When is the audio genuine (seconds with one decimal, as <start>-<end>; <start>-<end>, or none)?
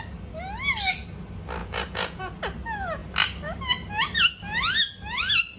0.0-1.6; 2.2-5.6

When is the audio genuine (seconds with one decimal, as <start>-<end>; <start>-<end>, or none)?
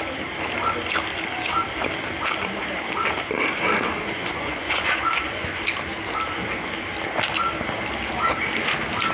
0.0-4.0; 5.6-9.1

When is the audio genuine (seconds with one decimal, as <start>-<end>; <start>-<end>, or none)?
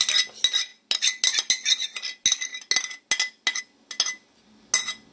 0.0-5.1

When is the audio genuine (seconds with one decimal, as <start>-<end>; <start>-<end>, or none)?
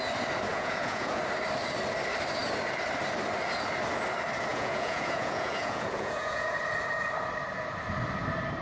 0.0-0.5; 1.2-4.5; 6.6-8.6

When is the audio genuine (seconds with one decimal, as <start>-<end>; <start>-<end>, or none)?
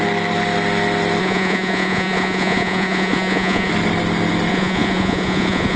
0.0-1.2; 3.7-4.5